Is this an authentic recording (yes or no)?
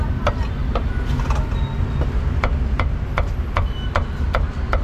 yes